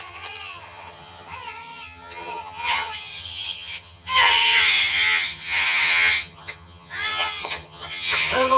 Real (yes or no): no